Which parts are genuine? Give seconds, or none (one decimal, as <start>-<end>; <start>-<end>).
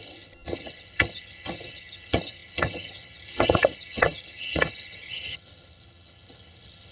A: none